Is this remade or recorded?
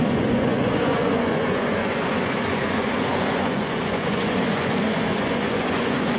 remade